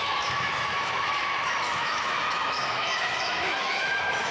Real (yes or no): no